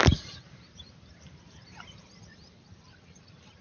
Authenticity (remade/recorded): remade